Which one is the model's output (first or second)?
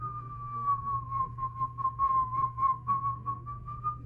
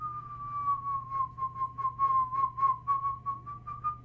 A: first